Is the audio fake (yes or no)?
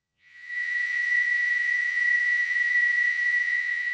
yes